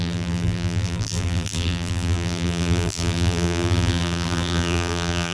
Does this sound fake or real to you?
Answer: fake